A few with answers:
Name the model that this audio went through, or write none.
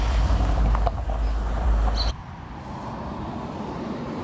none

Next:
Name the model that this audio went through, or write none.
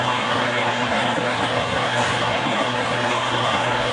codec, SNAC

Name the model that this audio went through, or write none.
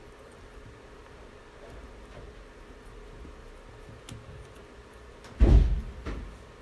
none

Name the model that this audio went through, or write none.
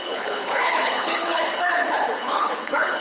codec, HILCodec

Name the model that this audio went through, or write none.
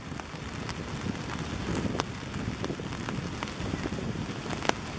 none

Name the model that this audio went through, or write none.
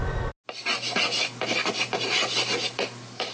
none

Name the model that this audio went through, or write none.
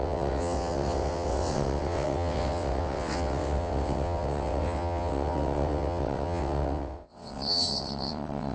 vocoder, WaveNeXt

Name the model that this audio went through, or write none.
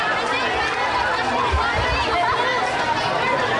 none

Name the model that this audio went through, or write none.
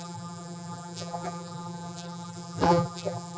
vocoder, BigVGAN v2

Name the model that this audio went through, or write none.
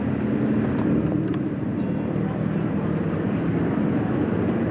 none